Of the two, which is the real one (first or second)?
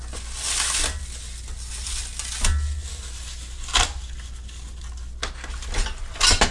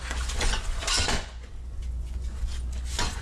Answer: first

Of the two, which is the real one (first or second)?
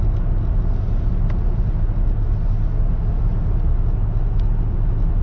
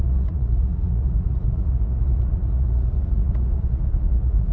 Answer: first